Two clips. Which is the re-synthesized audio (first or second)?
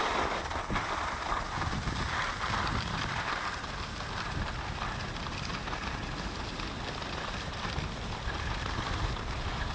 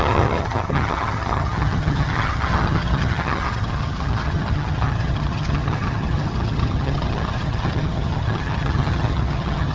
second